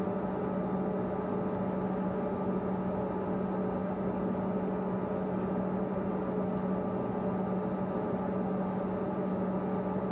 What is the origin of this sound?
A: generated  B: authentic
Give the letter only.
B